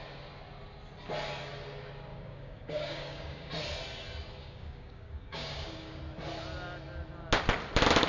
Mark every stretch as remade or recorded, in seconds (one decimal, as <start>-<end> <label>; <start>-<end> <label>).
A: 0.0-2.1 recorded; 2.1-3.5 remade; 3.5-4.4 recorded; 4.4-6.0 remade; 6.0-8.1 recorded